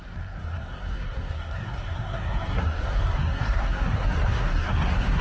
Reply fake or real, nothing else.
fake